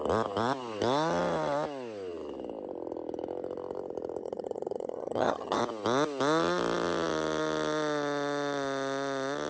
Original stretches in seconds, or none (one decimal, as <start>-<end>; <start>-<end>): 0.0-4.2; 5.6-9.5